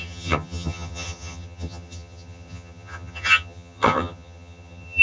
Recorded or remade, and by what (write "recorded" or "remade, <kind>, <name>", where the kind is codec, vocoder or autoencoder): remade, vocoder, HiFi-GAN